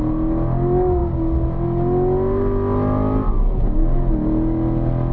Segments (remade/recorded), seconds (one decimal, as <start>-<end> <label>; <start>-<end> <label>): 0.0-5.1 recorded